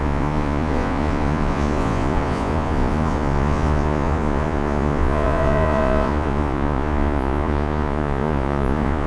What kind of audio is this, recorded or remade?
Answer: remade